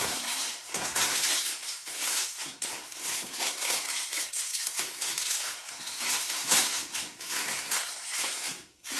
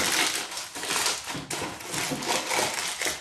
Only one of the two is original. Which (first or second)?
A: second